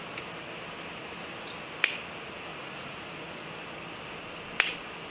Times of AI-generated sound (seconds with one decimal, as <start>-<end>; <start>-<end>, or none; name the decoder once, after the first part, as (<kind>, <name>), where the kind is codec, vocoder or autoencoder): 2.5-3.3 (vocoder, Vocos)